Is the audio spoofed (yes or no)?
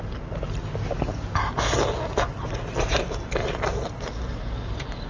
no